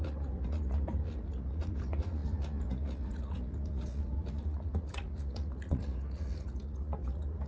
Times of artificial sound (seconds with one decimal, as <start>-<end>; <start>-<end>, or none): 0.0-7.5